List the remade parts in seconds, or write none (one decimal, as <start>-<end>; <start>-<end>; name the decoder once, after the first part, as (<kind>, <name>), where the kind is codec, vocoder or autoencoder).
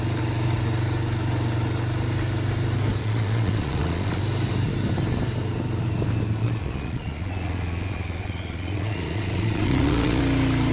3.0-4.2 (vocoder, Vocos); 6.4-10.2